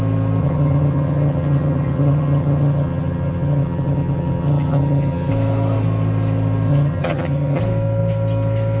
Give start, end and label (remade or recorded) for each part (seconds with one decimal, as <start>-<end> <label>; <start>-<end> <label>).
0.0-0.4 recorded; 0.4-5.3 remade; 5.3-6.7 recorded; 6.7-7.6 remade; 7.6-8.8 recorded